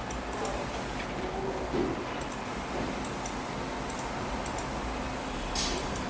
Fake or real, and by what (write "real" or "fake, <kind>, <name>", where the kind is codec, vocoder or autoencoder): real